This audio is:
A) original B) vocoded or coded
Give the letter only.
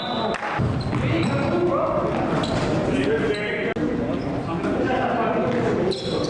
A